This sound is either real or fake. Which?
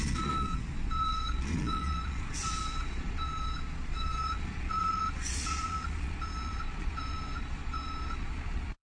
fake